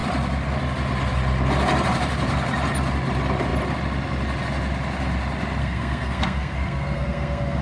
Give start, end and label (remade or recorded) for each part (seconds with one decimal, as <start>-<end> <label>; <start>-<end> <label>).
0.0-5.6 recorded; 5.6-7.6 remade